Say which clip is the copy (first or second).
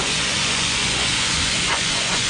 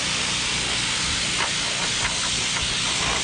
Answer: first